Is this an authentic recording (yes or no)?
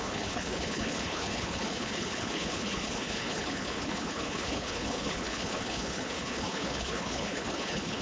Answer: no